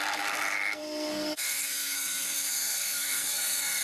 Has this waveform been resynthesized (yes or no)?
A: yes